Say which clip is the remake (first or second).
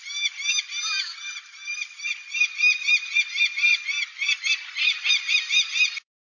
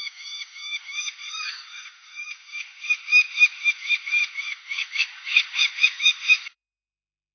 second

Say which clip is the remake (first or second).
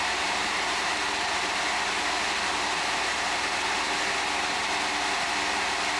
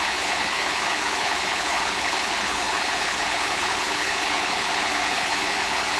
second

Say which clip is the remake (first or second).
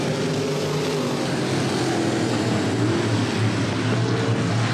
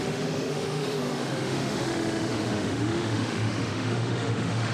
second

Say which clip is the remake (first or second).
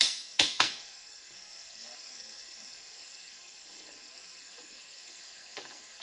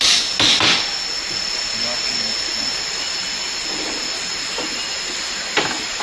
first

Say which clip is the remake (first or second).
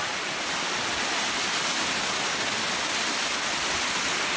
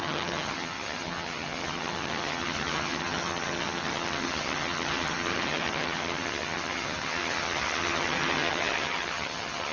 second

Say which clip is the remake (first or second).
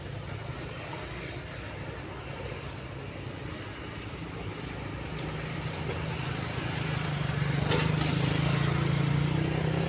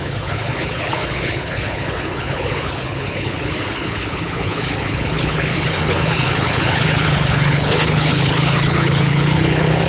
second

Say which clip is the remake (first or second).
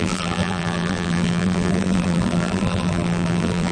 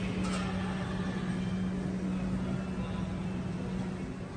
first